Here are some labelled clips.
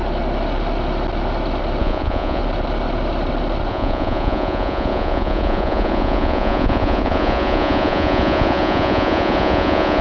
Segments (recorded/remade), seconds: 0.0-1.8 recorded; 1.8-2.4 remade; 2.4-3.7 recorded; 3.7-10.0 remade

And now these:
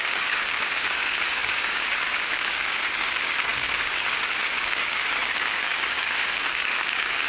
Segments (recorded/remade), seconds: 0.0-7.3 remade